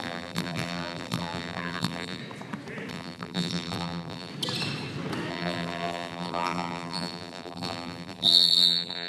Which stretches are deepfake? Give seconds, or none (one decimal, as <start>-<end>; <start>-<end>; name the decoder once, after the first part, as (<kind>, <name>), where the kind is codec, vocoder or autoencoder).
0.0-2.2 (vocoder, BigVGAN v2); 2.9-4.3; 5.3-9.1